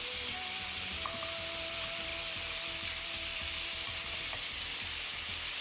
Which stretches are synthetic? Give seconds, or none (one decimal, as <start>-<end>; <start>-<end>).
none